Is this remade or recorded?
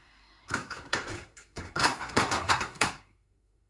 remade